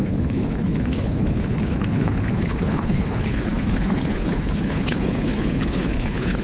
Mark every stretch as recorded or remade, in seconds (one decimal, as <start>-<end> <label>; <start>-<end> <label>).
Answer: 0.0-6.4 remade